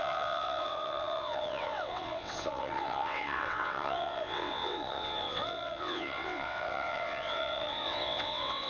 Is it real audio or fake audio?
fake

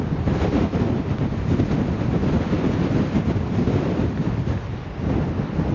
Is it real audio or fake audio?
real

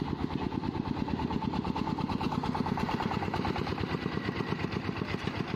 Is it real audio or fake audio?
real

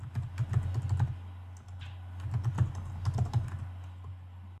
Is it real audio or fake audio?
real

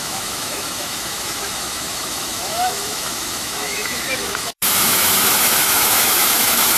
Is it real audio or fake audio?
fake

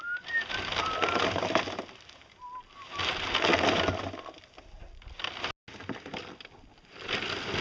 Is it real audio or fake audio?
real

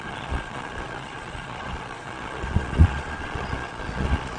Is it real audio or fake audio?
fake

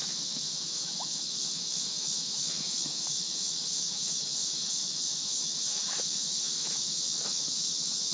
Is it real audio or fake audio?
fake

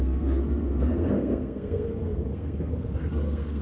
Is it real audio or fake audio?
fake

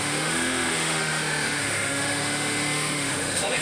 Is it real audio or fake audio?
fake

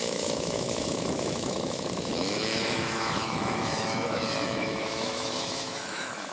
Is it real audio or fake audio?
fake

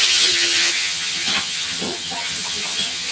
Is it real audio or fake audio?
fake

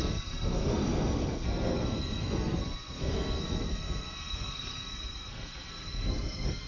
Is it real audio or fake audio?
fake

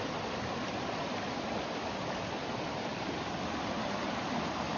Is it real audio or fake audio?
real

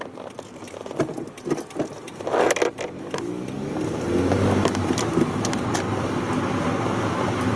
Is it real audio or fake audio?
real